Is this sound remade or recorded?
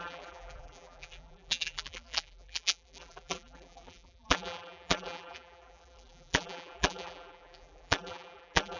remade